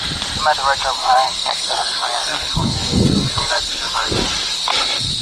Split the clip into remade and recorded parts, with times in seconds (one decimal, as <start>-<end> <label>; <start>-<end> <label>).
0.0-1.0 recorded; 1.0-4.1 remade; 4.1-5.2 recorded